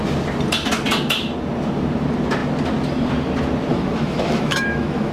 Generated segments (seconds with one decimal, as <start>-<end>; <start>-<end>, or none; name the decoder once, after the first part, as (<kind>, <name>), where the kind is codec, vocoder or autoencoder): 3.7-5.1 (autoencoder, DAC-VAE)